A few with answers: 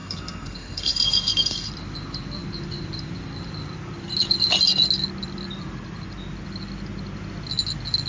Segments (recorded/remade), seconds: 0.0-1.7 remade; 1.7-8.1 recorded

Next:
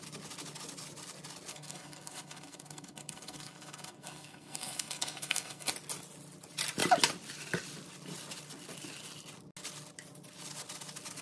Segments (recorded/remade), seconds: 0.0-1.5 recorded; 1.5-5.7 remade; 5.7-11.2 recorded

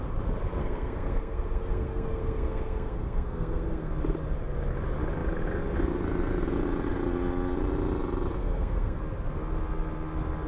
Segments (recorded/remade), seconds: 0.0-0.6 recorded; 0.6-3.9 remade; 3.9-8.4 recorded; 8.4-9.0 remade; 9.0-10.5 recorded

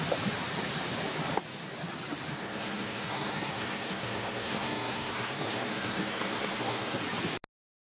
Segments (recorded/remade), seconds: 0.0-2.3 recorded; 2.3-7.0 remade; 7.0-7.9 recorded

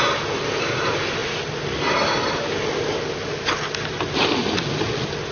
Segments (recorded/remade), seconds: 0.0-5.3 recorded

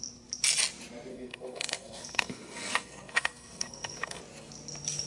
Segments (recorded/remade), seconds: 0.0-1.1 recorded; 1.1-4.2 remade; 4.2-5.1 recorded

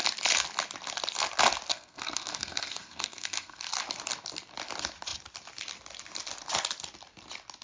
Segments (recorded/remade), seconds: 0.0-1.7 recorded; 1.7-3.6 remade; 3.6-7.6 recorded